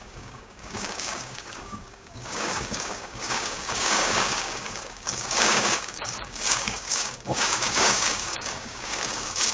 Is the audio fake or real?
fake